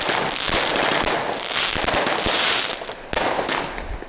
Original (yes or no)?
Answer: yes